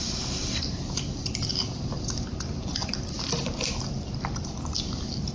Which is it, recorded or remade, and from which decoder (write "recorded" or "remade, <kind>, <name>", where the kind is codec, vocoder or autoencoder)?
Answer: recorded